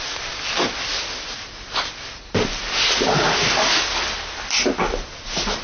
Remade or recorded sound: recorded